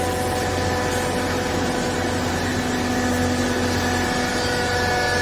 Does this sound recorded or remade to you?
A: recorded